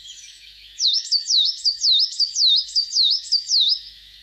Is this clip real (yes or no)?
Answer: no